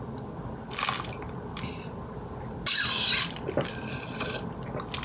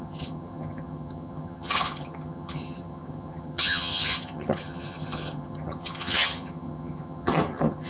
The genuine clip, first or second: first